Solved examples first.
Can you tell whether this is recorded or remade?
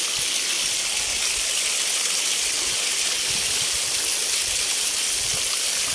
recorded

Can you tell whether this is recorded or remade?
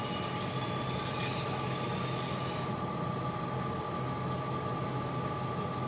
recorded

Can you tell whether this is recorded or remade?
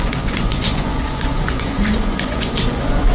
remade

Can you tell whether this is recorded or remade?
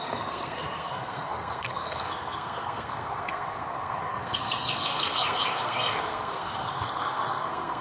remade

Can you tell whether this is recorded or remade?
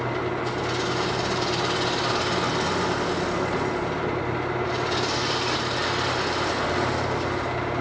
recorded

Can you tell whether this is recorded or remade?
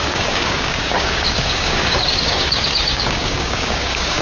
remade